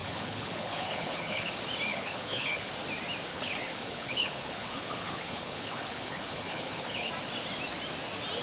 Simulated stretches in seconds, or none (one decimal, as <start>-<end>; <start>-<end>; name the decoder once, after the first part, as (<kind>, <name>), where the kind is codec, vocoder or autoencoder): 0.0-1.5 (codec, HILCodec); 1.9-2.7; 3.3-7.1